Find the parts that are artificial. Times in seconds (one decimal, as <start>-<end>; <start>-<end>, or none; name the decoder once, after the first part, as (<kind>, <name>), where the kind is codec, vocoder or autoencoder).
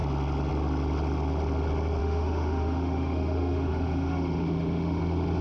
2.0-5.0 (autoencoder, DAC-VAE)